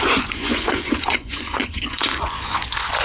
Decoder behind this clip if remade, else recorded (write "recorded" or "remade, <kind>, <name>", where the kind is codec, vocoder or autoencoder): remade, vocoder, Vocos